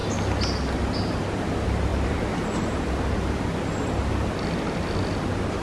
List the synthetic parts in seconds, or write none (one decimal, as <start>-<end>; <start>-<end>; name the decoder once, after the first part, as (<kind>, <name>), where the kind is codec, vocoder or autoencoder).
none